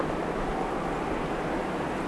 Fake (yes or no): no